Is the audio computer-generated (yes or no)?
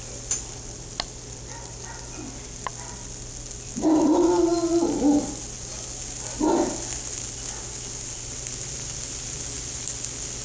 no